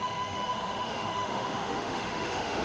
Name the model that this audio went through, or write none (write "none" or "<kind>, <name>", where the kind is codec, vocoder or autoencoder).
autoencoder, DAC-VAE